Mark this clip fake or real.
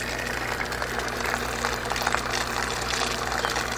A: real